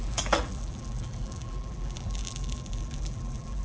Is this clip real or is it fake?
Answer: fake